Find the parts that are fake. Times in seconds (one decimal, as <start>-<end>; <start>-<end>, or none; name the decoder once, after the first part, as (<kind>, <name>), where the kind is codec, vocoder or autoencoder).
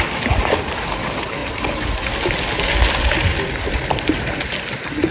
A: none